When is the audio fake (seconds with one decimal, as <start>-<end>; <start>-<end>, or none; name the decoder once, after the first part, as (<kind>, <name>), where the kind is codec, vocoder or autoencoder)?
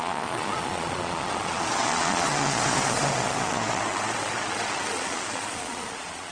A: 0.0-6.3 (vocoder, Vocos)